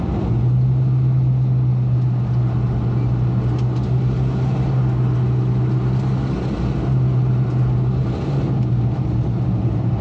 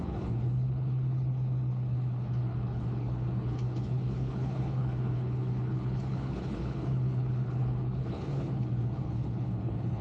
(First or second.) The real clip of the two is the first